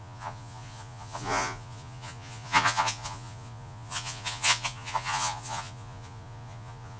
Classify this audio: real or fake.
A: fake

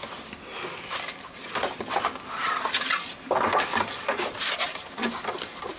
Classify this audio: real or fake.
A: real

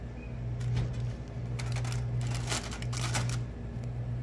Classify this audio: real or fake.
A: real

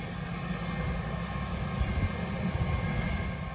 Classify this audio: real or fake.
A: real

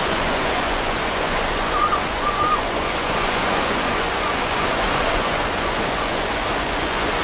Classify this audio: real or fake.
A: fake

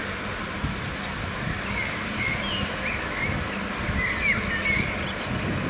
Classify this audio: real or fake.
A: real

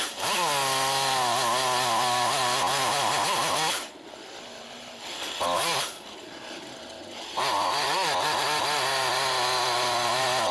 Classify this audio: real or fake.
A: real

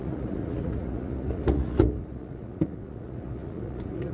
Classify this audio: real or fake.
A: fake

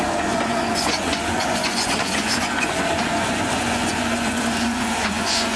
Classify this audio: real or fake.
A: fake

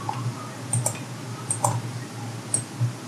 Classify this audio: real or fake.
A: real